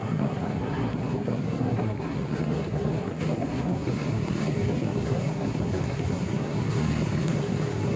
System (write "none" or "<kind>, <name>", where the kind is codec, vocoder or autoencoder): codec, SNAC